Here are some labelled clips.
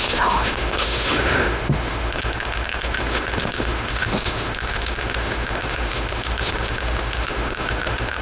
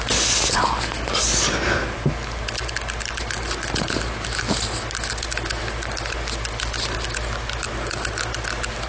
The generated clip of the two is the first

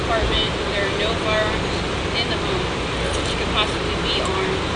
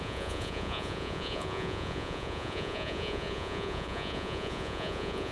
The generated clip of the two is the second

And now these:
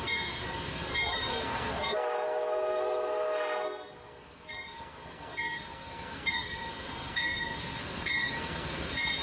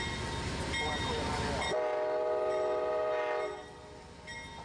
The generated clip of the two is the first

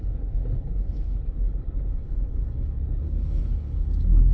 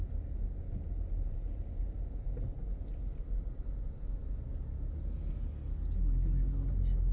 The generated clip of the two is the first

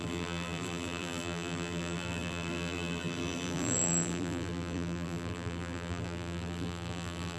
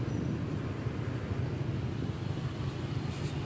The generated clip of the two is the first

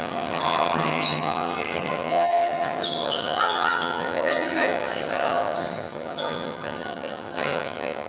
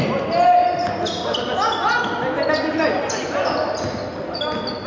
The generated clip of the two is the first